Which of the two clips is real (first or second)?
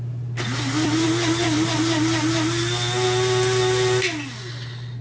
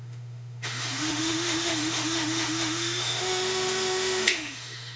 first